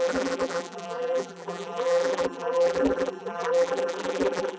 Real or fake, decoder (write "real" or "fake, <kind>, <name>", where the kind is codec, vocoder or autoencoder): fake, vocoder, BigVGAN v2